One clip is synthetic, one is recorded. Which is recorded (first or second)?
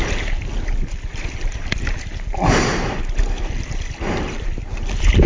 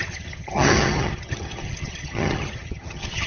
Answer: first